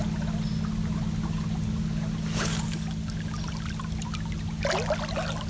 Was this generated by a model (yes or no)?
no